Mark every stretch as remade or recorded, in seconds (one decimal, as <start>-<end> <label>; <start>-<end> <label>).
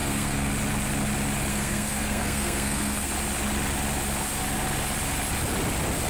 0.0-0.5 remade; 0.5-1.5 recorded; 1.5-3.1 remade; 3.1-6.1 recorded